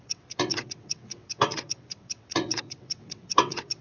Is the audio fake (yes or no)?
yes